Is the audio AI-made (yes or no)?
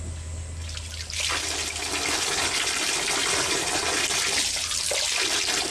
no